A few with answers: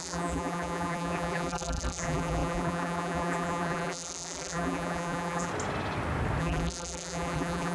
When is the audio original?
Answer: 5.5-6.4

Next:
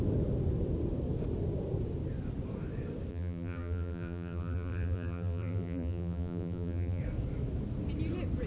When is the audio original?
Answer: 0.0-3.1; 7.0-8.5

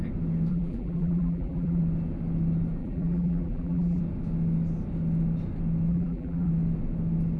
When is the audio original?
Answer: 0.0-0.5; 1.8-2.8; 4.0-5.9; 6.5-7.4